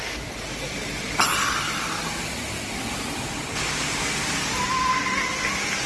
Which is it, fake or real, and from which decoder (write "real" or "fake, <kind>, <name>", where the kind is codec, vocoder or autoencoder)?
real